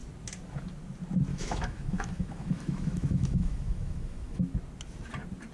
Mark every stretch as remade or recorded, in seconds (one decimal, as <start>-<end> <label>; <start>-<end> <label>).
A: 0.0-1.3 recorded; 1.3-4.4 remade; 4.4-5.5 recorded